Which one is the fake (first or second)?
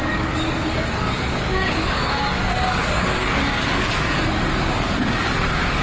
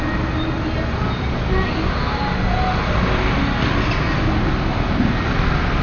first